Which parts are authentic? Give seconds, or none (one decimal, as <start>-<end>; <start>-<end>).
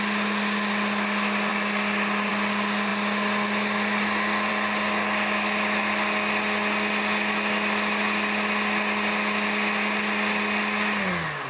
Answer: 0.0-11.5